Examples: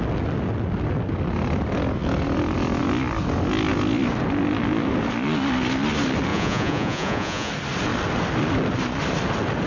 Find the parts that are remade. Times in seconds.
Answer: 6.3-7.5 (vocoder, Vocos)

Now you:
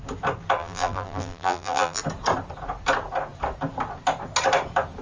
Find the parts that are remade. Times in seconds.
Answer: 0.6-2.0 (vocoder, BigVGAN v2)

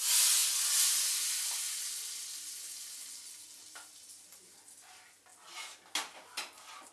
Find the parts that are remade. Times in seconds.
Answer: none

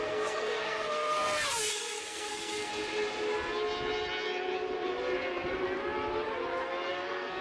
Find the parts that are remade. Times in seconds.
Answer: 0.0-2.7 (codec, SNAC); 6.9-7.4

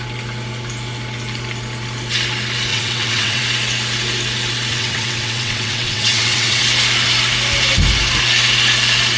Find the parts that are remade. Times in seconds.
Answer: 2.7-3.4 (vocoder, WaveNeXt); 4.7-6.6

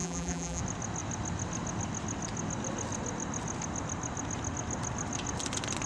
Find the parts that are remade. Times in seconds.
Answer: 0.0-0.6 (vocoder, BigVGAN v2)